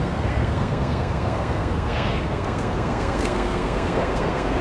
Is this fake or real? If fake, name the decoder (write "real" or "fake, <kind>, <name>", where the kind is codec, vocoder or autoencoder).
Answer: fake, codec, SNAC